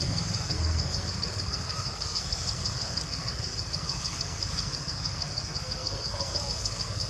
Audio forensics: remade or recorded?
remade